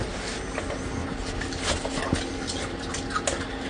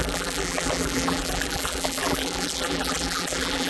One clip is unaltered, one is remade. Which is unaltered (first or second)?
first